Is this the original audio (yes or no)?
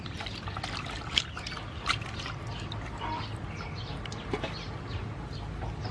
yes